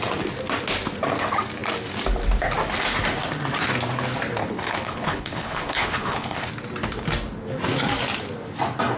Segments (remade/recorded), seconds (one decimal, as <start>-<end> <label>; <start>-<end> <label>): 0.0-4.4 recorded; 4.4-6.5 remade; 6.5-9.0 recorded